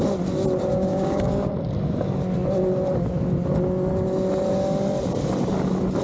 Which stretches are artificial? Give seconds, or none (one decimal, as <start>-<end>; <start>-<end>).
0.7-1.5